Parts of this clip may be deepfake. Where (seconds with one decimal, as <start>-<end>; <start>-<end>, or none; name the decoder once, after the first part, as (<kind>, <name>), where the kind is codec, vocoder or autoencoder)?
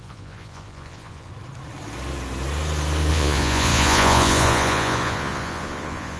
0.0-1.3 (vocoder, Vocos); 3.1-6.2